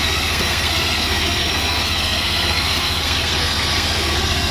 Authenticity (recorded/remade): remade